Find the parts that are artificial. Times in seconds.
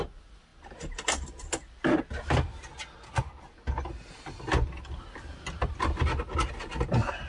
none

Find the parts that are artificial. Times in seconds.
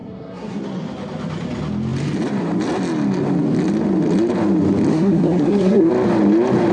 0.0-0.6 (codec, SNAC); 4.9-5.9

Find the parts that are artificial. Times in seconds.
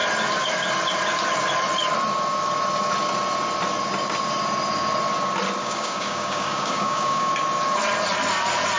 5.6-7.3 (codec, DAC)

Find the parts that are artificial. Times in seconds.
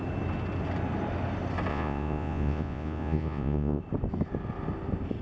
1.7-3.8 (vocoder, Vocos)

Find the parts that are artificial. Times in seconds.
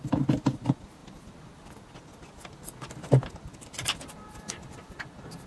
none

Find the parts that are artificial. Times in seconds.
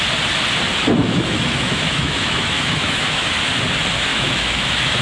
1.0-3.3 (autoencoder, DAC-VAE); 4.1-5.0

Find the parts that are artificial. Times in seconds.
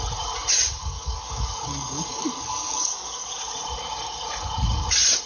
0.8-3.4 (codec, DAC)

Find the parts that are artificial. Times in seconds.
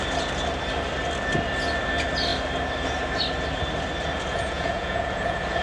4.3-5.6 (vocoder, Vocos)